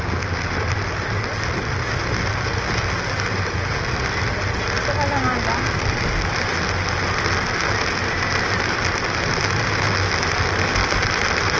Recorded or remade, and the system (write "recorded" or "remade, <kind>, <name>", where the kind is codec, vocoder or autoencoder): recorded